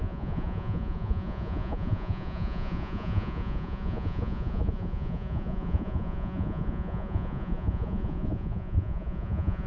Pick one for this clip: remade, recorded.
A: remade